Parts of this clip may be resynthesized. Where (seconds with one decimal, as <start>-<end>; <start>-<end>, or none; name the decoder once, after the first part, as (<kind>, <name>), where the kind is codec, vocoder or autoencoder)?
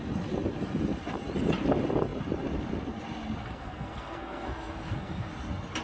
3.4-5.3 (codec, SNAC)